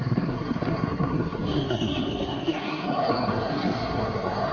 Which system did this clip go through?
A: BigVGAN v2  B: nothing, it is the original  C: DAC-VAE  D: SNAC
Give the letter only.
D